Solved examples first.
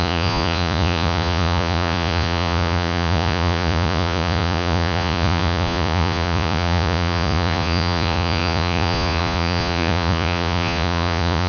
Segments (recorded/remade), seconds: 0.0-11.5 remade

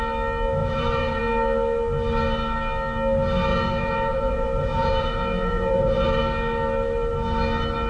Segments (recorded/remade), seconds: 0.0-0.6 recorded; 0.6-1.2 remade; 1.2-3.5 recorded; 3.5-6.2 remade; 6.2-7.9 recorded